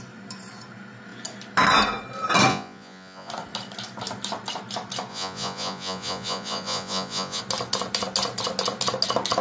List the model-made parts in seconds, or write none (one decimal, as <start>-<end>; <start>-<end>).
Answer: 2.5-3.3; 5.1-7.4